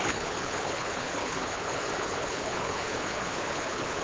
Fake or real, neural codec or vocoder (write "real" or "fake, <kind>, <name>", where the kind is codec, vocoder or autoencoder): fake, codec, HILCodec